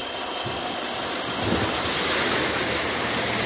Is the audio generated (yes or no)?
no